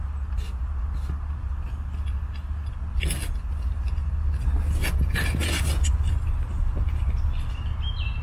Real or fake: real